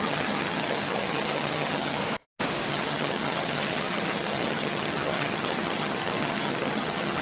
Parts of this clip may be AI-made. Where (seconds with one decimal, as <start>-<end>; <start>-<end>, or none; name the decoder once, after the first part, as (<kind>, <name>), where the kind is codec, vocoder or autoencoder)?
0.0-2.0 (vocoder, HiFi-GAN); 2.7-7.2